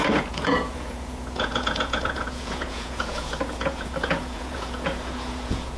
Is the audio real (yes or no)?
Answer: no